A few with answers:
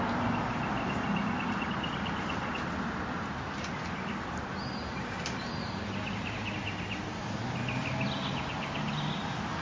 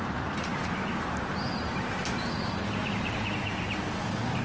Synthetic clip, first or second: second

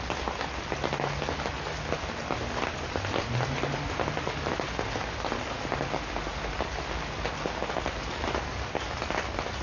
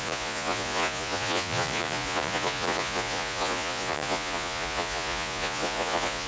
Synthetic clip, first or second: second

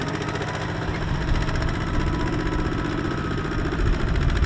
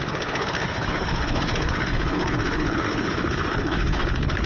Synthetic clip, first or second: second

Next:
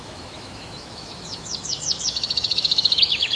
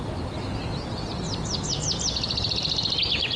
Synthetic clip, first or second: first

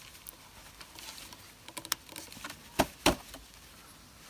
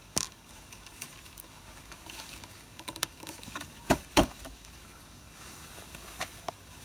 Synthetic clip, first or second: second